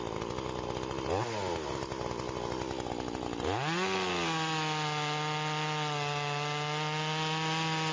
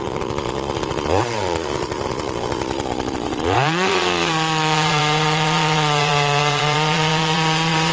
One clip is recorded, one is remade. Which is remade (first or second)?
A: second